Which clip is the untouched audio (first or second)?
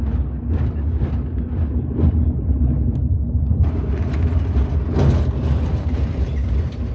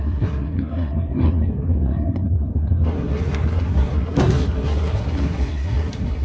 first